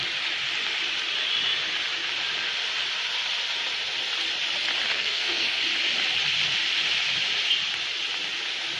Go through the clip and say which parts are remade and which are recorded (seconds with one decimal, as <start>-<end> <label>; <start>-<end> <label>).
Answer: 0.0-4.9 recorded; 4.9-5.6 remade; 5.6-8.8 recorded